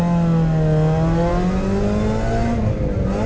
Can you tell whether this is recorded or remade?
recorded